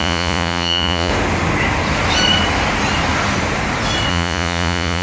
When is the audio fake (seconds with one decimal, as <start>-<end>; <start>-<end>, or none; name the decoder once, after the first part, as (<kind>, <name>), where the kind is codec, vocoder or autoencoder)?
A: 0.0-1.1 (vocoder, Vocos); 4.1-5.0